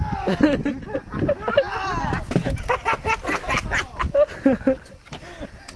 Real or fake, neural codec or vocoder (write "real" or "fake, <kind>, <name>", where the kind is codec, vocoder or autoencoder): real